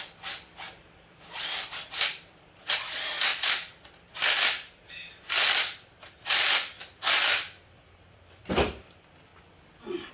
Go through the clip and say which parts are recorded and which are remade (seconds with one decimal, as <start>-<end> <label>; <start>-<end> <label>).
0.0-9.3 remade; 9.3-10.1 recorded